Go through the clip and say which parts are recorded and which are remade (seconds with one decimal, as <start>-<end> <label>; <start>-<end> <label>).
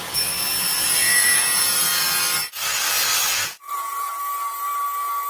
0.0-1.1 recorded; 1.1-1.9 remade; 1.9-3.3 recorded; 3.3-4.1 remade; 4.1-5.3 recorded